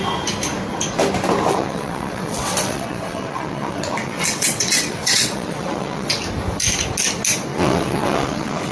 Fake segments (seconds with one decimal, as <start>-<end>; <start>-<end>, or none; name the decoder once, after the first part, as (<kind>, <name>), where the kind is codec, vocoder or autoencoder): 1.5-6.2 (vocoder, WaveNeXt); 7.5-8.7